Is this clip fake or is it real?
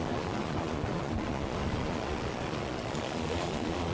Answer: fake